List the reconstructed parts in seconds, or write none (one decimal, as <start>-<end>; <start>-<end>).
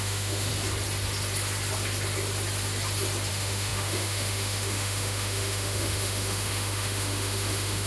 0.0-0.5; 3.3-7.9